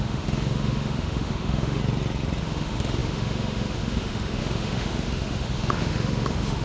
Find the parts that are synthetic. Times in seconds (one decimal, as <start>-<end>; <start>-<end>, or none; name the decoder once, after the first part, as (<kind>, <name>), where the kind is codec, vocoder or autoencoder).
0.0-1.8 (autoencoder, DAC-VAE); 2.4-6.6

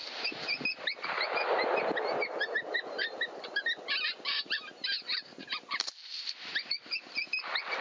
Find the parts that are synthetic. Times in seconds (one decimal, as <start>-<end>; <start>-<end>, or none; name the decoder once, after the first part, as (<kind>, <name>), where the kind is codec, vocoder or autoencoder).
0.0-1.1 (vocoder, BigVGAN v2)

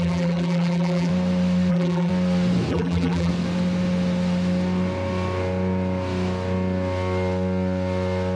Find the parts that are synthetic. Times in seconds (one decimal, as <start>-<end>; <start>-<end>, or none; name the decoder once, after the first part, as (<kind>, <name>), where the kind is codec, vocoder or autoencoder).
0.0-1.1 (vocoder, BigVGAN v2); 1.7-2.1; 2.7-3.3

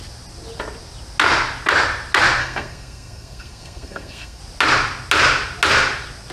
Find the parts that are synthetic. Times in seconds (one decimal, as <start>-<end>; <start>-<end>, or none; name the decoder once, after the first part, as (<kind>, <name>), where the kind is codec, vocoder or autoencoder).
2.4-4.4 (codec, SNAC)

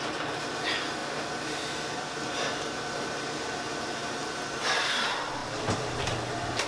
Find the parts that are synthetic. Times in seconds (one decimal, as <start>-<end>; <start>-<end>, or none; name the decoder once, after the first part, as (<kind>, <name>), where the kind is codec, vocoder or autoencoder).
5.4-6.7 (vocoder, BigVGAN v2)

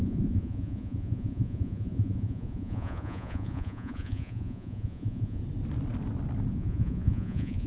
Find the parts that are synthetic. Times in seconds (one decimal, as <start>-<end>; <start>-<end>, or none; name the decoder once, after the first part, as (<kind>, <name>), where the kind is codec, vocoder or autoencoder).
0.0-5.4 (vocoder, Vocos); 6.5-7.7

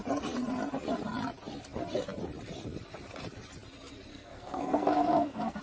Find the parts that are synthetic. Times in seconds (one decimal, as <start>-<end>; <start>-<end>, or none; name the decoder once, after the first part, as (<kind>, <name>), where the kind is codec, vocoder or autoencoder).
4.1-5.6 (codec, SNAC)